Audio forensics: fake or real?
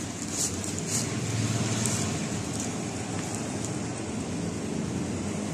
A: real